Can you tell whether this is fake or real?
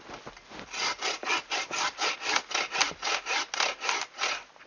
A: real